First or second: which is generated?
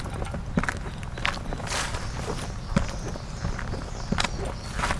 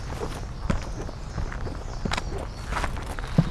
first